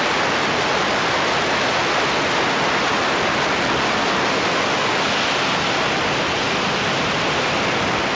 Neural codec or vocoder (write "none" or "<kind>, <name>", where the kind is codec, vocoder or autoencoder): none